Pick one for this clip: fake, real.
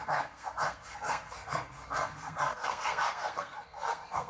fake